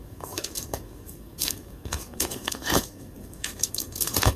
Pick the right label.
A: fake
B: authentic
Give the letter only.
A